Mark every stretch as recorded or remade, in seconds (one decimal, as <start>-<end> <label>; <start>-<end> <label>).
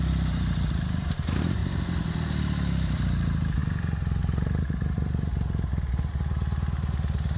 0.0-1.6 remade; 1.6-2.3 recorded; 2.3-5.3 remade; 5.3-7.4 recorded